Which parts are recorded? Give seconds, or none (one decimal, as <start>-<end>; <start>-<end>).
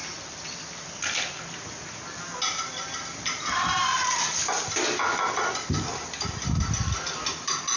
0.0-7.8